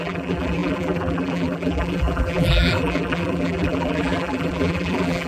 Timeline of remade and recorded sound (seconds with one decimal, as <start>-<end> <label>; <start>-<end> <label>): 0.0-5.3 remade